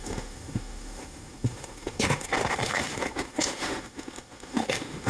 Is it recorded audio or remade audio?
remade